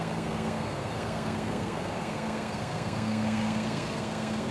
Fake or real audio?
fake